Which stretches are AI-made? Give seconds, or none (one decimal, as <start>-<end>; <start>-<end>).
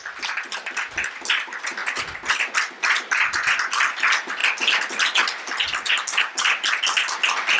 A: none